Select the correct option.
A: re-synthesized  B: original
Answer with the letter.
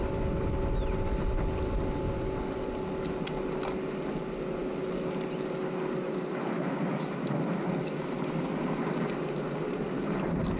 B